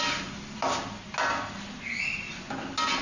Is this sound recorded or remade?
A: recorded